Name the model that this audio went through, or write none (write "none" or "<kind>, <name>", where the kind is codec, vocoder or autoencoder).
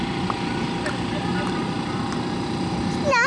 none